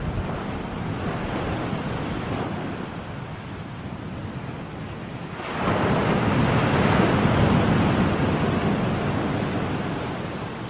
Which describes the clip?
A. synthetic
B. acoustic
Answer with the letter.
B